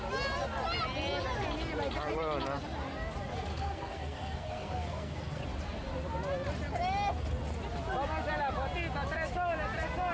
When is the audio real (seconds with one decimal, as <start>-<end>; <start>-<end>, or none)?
0.0-3.5; 5.4-10.1